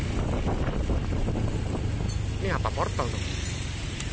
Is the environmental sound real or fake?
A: real